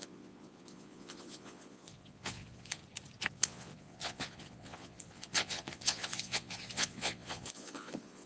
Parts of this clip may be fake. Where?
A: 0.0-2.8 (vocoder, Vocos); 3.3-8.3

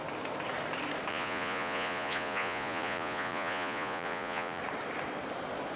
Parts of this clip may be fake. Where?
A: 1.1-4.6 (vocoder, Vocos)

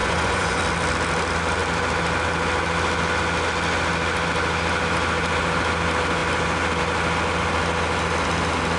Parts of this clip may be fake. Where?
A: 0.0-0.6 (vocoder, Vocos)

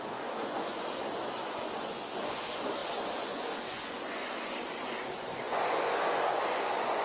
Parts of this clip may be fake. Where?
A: 0.0-7.0 (vocoder, Vocos)

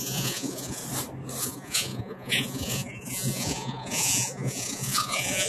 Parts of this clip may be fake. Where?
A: 0.0-0.8 (vocoder, Vocos); 1.4-5.5